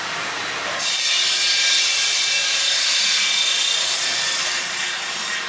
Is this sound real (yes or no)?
yes